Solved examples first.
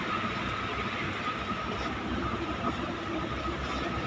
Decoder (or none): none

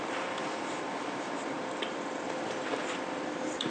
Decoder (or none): vocoder, BigVGAN v2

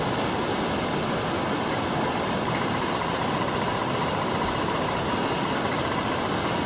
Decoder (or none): none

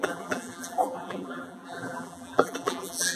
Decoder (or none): vocoder, BigVGAN v2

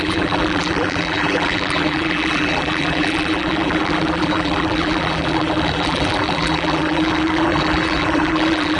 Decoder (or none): vocoder, BigVGAN v2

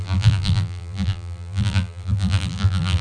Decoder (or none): vocoder, BigVGAN v2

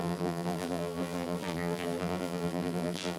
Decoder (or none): vocoder, BigVGAN v2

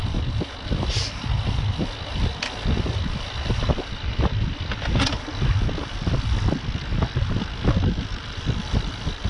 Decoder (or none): none